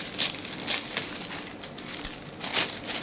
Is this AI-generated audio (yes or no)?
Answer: no